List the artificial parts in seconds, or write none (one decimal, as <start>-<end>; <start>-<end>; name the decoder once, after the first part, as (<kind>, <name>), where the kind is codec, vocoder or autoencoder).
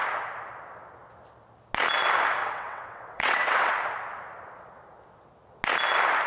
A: 2.4-3.7 (vocoder, WaveNeXt)